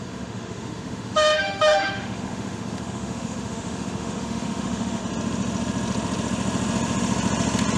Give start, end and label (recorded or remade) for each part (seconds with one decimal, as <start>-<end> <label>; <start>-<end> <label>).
0.0-5.0 remade; 5.0-7.8 recorded